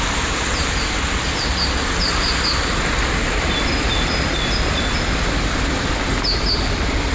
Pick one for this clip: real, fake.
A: real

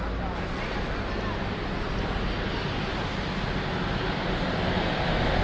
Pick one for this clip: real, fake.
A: real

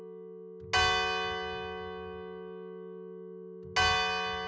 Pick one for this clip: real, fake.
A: real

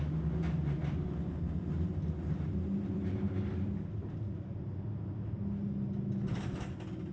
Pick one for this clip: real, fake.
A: real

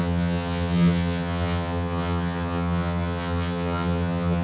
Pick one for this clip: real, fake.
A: fake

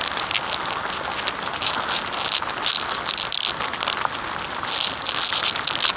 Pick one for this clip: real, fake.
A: real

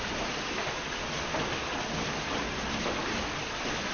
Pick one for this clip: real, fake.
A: real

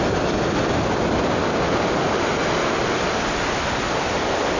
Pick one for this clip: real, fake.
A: real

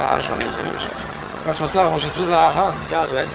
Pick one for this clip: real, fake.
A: fake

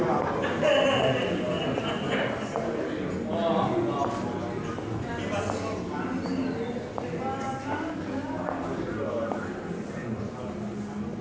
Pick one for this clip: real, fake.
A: real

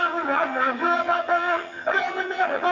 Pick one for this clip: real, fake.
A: fake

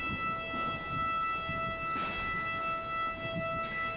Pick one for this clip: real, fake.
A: real